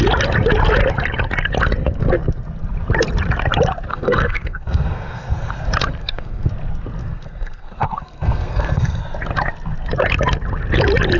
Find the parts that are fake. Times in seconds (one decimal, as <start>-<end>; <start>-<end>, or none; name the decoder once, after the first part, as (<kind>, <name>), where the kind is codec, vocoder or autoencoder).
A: 3.9-5.5 (codec, SNAC); 6.0-6.5; 7.0-9.0